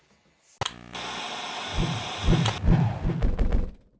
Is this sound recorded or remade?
recorded